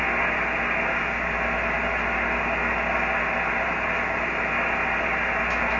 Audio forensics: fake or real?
real